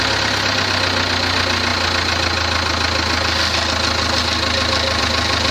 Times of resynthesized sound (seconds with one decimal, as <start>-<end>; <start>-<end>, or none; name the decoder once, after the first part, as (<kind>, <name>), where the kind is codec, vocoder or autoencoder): none